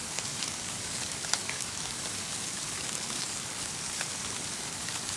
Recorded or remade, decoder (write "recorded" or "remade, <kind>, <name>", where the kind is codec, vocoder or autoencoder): remade, codec, DAC